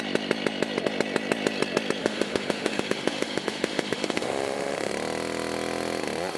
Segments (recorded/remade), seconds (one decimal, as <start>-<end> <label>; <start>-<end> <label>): 0.0-2.0 recorded; 2.0-4.9 remade; 4.9-6.4 recorded